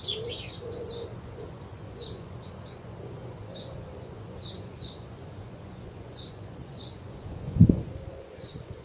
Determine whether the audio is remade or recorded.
remade